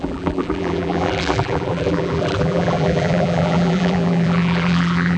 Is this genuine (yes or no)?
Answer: no